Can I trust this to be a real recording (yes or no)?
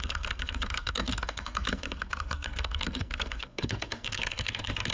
no